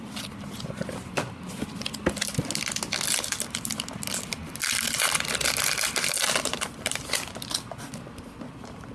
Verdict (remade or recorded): recorded